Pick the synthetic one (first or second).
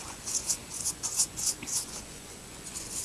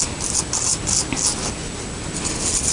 first